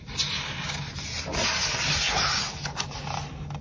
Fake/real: real